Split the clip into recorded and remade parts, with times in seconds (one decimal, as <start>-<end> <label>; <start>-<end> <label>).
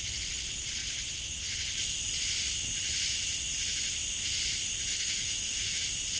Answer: 0.0-4.9 recorded; 4.9-5.8 remade; 5.8-6.2 recorded